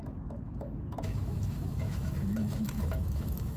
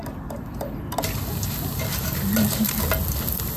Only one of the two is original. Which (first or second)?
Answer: second